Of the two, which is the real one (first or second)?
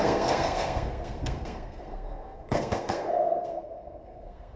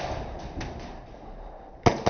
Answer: second